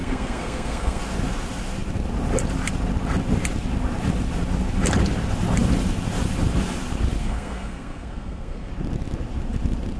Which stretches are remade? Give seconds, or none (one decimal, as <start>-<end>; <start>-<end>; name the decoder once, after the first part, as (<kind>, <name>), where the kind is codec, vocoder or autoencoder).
0.0-1.0 (codec, SNAC); 7.2-8.7